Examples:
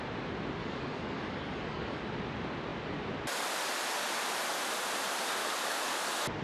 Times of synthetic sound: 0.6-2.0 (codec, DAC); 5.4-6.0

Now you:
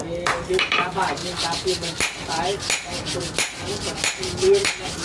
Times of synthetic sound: none

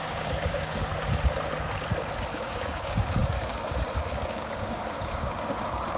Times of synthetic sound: 0.0-0.9 (codec, DAC); 2.3-6.0

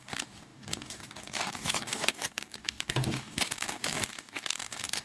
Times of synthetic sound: 0.0-5.0 (codec, DAC)

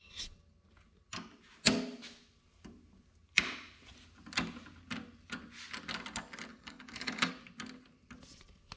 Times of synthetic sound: 6.5-7.3 (codec, DAC)

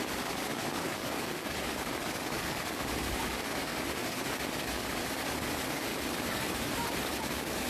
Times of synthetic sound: 0.0-5.9 (codec, DAC); 7.2-7.7

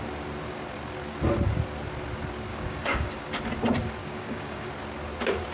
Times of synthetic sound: 2.5-3.2 (codec, DAC); 4.0-4.7